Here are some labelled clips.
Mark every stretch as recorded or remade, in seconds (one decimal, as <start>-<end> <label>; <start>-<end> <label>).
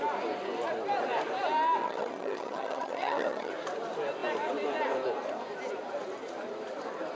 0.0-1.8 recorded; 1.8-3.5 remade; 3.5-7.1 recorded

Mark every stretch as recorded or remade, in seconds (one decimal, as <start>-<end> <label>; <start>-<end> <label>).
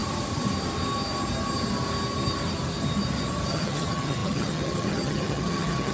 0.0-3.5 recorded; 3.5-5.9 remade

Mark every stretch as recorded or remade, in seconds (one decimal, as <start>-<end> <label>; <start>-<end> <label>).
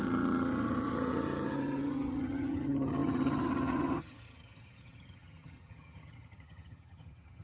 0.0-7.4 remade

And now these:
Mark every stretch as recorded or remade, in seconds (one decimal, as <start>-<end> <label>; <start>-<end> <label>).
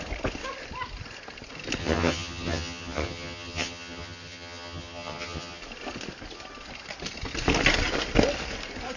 0.0-1.8 recorded; 1.8-5.6 remade; 5.6-9.0 recorded